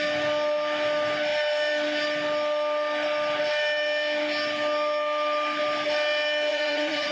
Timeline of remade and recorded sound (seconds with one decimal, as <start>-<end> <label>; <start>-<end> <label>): 0.0-6.5 recorded; 6.5-7.1 remade